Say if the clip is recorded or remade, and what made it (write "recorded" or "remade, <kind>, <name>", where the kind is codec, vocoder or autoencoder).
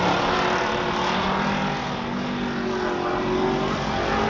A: recorded